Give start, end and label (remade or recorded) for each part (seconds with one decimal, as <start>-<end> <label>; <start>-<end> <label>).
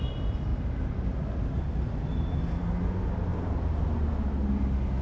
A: 0.0-0.5 recorded; 0.5-1.0 remade; 1.0-3.3 recorded; 3.3-4.1 remade; 4.1-5.0 recorded